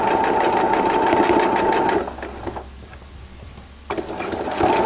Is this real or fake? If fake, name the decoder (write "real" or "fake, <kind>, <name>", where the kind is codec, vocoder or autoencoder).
real